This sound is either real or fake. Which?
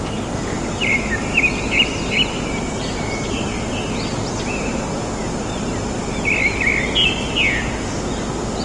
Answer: real